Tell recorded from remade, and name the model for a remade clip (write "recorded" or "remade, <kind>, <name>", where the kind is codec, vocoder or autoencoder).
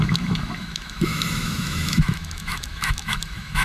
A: remade, autoencoder, DAC-VAE